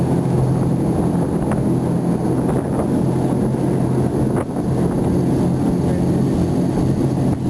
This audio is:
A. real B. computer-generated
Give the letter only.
A